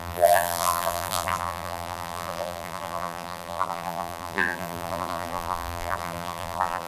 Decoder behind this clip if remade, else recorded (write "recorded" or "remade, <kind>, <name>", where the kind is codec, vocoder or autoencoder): remade, vocoder, BigVGAN v2